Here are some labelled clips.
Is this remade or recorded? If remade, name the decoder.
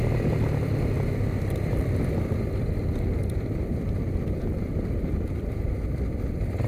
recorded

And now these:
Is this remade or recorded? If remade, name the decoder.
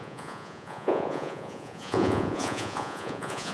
remade, vocoder, Vocos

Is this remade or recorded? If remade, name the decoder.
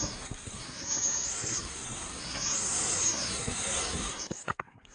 remade, codec, SNAC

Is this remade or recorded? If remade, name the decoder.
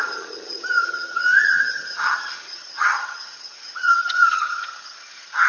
remade, vocoder, HiFi-GAN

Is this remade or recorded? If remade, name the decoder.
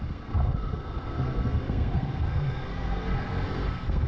remade, codec, SNAC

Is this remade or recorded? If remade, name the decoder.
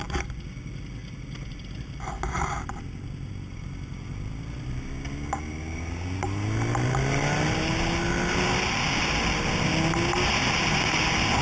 recorded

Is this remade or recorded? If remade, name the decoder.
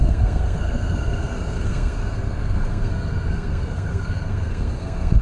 remade, codec, SNAC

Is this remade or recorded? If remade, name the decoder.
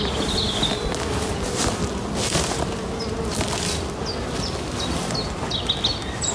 recorded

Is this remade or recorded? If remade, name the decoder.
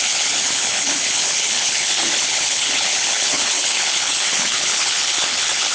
remade, codec, HILCodec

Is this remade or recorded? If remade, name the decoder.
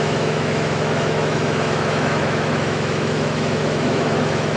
remade, autoencoder, DAC-VAE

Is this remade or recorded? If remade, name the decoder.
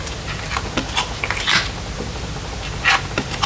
recorded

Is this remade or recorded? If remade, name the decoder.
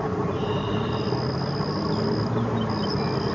recorded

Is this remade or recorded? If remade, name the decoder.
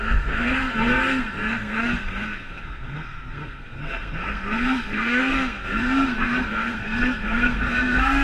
remade, codec, SNAC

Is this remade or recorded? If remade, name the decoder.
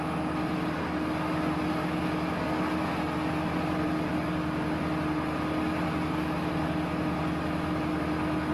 recorded